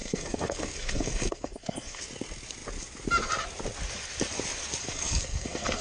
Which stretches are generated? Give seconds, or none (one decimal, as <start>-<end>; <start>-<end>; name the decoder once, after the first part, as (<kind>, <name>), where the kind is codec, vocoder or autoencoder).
0.0-2.0 (codec, SNAC); 4.8-5.8